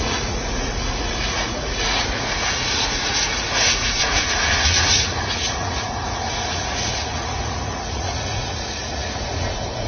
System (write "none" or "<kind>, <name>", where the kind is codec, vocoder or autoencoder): vocoder, Vocos